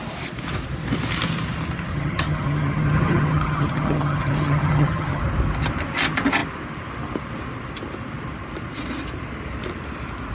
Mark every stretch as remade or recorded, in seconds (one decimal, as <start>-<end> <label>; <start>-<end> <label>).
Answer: 0.0-1.9 recorded; 1.9-5.2 remade; 5.2-10.3 recorded

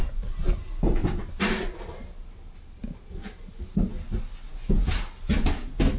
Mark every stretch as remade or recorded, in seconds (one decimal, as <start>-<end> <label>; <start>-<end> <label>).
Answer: 0.0-1.0 recorded; 1.0-3.6 remade; 3.6-6.0 recorded

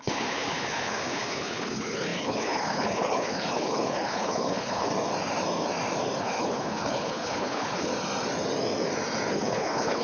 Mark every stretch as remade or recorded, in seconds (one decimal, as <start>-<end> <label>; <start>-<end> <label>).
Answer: 0.0-4.9 remade; 4.9-6.2 recorded; 6.2-7.9 remade; 7.9-9.3 recorded; 9.3-10.0 remade

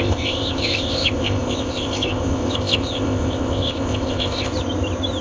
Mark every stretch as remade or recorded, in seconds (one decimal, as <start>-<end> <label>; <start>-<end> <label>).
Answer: 0.0-4.5 remade; 4.5-5.2 recorded

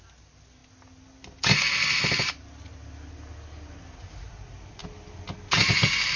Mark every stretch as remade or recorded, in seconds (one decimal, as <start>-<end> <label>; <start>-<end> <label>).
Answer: 0.0-6.2 recorded

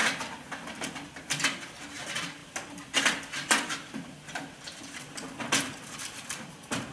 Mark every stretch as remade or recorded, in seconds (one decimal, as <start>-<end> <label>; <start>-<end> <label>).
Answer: 0.0-6.9 recorded